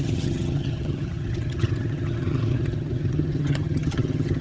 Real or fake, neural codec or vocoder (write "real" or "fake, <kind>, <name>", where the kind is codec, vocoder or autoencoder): fake, vocoder, HiFi-GAN